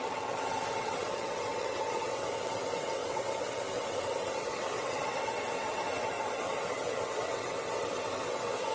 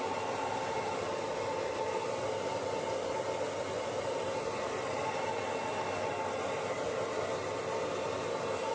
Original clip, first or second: second